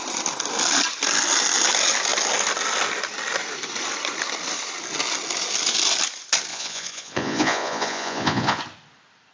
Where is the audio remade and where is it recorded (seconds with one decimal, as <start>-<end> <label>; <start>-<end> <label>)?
0.0-6.5 recorded; 6.5-8.6 remade; 8.6-9.3 recorded